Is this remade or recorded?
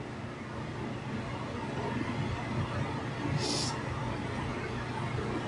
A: recorded